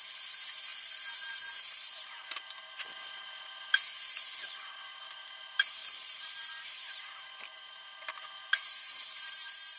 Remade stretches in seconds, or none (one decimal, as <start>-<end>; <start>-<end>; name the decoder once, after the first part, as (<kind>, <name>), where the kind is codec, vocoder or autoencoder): 0.0-0.7 (vocoder, BigVGAN v2); 1.3-9.8